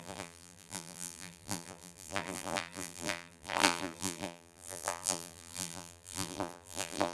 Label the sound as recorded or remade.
remade